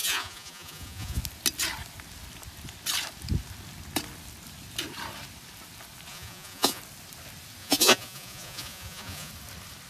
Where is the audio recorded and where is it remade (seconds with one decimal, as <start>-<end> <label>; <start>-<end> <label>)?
0.0-1.2 remade; 1.2-6.1 recorded; 6.1-6.8 remade; 6.8-7.6 recorded; 7.6-9.3 remade; 9.3-9.9 recorded